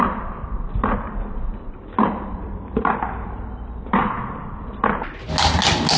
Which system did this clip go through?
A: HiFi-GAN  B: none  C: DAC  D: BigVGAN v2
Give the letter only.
B